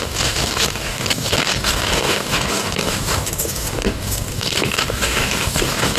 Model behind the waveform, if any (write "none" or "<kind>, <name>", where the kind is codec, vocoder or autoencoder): codec, DAC